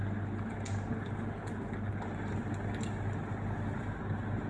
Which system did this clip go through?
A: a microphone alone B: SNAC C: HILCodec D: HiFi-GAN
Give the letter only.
A